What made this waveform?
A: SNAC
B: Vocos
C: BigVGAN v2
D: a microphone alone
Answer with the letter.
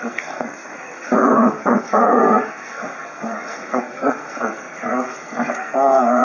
A